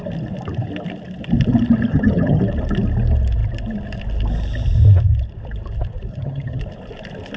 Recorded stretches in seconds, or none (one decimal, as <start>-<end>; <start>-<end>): 0.0-1.9; 2.4-6.1; 6.6-7.4